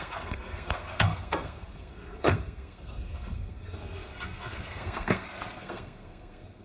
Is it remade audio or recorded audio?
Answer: remade